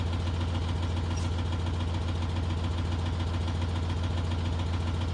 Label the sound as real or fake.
real